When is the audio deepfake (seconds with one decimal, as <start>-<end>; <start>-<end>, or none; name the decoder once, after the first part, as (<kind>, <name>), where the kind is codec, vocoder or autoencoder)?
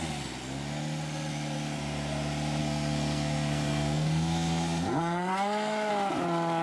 2.6-5.9 (codec, SNAC)